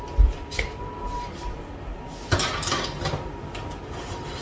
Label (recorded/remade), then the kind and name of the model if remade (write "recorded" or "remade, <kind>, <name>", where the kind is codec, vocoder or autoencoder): recorded